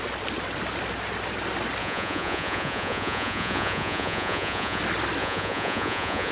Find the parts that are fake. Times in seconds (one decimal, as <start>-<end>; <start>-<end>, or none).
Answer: 1.8-4.8; 5.2-6.3